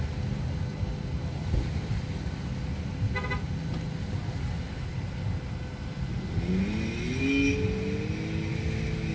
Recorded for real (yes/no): yes